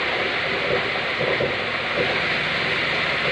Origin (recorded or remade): recorded